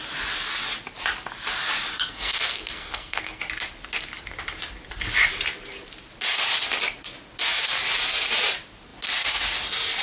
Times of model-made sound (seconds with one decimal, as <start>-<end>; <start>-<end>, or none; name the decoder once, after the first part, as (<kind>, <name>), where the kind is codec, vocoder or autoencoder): 1.9-3.4 (codec, SNAC)